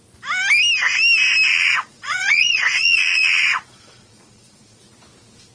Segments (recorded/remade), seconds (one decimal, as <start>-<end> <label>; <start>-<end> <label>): 0.0-1.5 recorded; 1.5-4.8 remade; 4.8-5.5 recorded